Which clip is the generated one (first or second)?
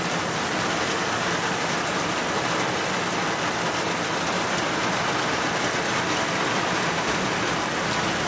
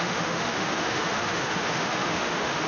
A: second